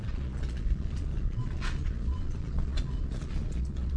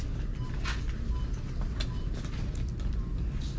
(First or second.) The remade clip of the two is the first